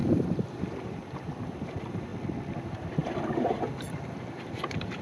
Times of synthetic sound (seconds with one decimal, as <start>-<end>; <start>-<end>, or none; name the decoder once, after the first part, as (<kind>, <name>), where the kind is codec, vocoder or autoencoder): 0.0-2.1 (vocoder, BigVGAN v2); 2.6-5.0